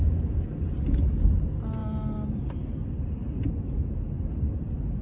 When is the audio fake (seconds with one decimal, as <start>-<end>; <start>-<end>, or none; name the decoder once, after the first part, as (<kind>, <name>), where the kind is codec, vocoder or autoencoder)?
none